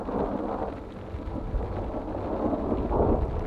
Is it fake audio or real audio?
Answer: real